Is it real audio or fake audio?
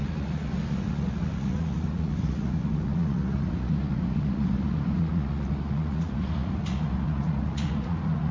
fake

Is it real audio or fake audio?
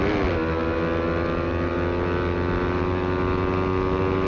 real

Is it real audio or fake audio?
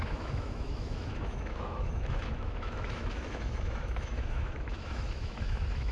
fake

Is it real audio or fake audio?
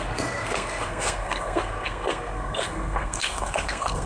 fake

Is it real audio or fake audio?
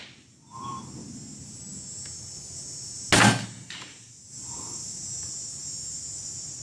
real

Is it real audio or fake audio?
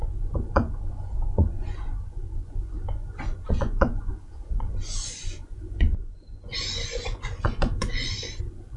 fake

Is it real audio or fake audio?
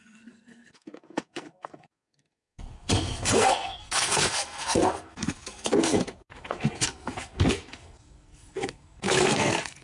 fake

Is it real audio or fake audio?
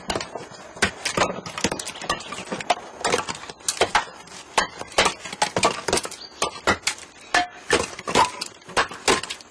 real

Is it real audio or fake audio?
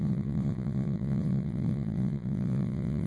fake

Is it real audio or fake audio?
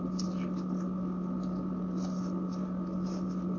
real